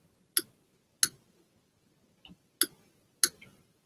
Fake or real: real